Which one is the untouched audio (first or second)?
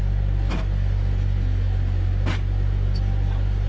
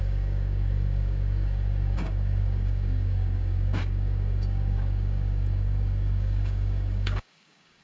first